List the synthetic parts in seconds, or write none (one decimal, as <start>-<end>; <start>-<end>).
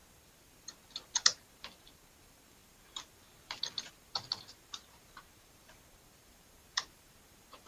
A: 0.0-7.7